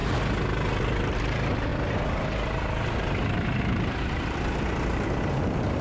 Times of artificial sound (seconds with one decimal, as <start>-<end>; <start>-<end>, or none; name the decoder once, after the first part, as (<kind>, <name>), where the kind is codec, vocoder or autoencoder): 1.1-1.7 (vocoder, BigVGAN v2); 3.6-5.8